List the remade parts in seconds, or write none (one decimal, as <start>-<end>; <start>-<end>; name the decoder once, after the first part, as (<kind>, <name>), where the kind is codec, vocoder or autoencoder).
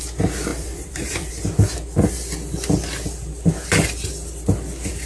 0.5-1.3 (vocoder, BigVGAN v2)